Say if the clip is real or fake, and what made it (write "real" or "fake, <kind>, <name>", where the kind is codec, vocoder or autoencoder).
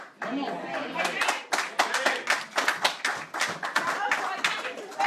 real